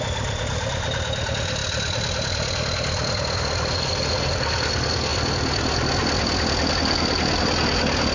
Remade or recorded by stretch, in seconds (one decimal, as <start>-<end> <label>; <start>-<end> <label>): 0.0-8.1 recorded